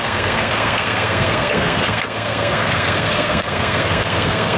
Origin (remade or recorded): remade